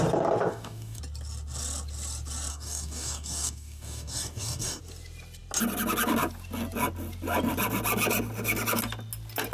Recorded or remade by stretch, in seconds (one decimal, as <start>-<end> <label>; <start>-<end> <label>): 0.0-0.5 recorded; 0.5-1.0 remade; 1.0-2.5 recorded; 2.5-4.8 remade; 4.8-9.5 recorded